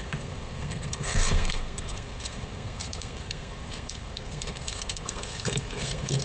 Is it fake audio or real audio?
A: fake